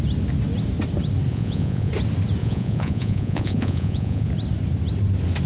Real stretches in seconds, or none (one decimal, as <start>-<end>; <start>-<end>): 0.0-1.3; 1.9-2.4; 4.3-5.5